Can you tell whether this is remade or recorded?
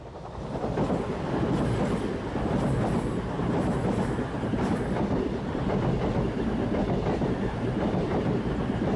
recorded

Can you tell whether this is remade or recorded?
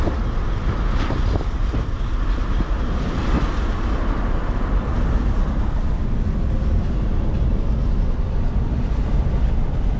recorded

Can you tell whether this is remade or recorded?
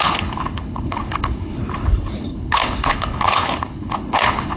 remade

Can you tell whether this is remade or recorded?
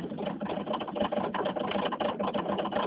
remade